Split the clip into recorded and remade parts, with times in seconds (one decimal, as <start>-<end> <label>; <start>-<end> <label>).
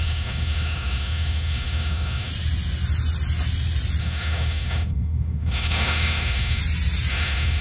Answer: 0.0-2.3 remade; 2.3-4.0 recorded; 4.0-6.6 remade; 6.6-7.1 recorded; 7.1-7.6 remade